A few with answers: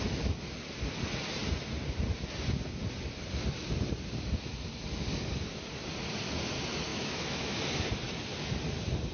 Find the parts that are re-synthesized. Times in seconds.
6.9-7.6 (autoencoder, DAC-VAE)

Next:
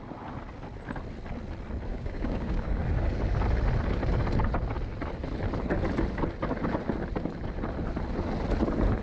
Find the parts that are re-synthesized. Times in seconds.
1.9-2.8 (codec, DAC)

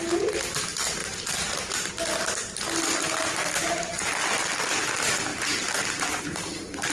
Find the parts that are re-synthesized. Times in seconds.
1.0-1.9 (vocoder, BigVGAN v2)

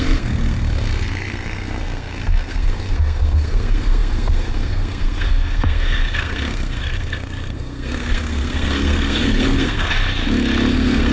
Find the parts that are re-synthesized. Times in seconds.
0.0-10.0 (codec, SNAC); 10.7-11.1

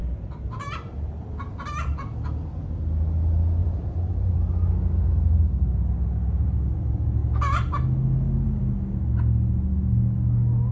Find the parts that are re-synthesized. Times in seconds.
0.0-1.4 (vocoder, BigVGAN v2); 3.6-4.4

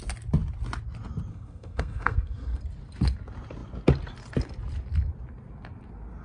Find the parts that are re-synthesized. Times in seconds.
1.3-2.6 (codec, SNAC)

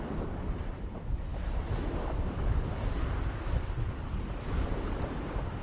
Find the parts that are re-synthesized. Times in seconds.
none